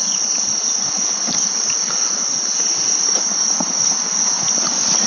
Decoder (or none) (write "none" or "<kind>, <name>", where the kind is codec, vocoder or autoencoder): none